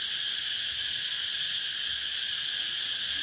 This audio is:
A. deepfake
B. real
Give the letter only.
B